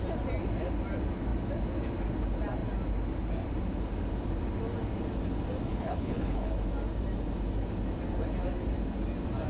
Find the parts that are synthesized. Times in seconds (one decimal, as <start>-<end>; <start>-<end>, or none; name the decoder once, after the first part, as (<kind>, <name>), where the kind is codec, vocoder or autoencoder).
5.7-6.5 (codec, HILCodec)